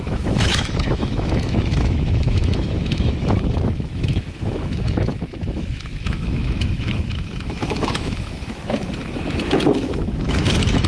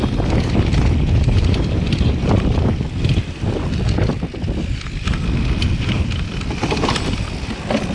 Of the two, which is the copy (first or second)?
first